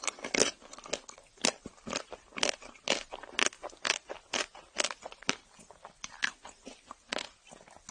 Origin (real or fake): real